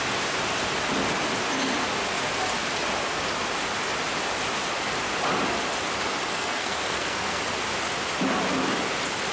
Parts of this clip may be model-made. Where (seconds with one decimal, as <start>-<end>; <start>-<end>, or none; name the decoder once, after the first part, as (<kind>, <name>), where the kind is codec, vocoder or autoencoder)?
6.3-7.4 (codec, SNAC)